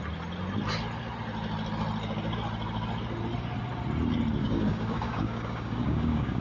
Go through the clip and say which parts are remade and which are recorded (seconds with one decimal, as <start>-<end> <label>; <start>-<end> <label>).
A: 0.0-4.4 recorded; 4.4-6.4 remade